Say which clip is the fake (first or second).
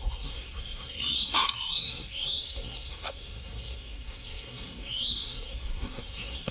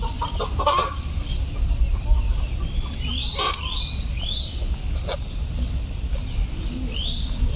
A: first